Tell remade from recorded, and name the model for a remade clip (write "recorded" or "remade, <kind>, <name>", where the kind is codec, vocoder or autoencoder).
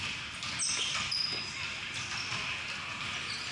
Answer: recorded